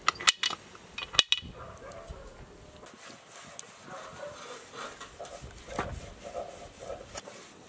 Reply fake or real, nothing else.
real